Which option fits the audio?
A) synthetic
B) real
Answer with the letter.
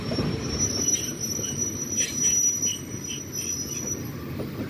B